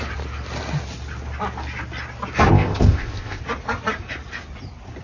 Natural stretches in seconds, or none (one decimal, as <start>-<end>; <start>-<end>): 0.0-2.5; 3.4-5.0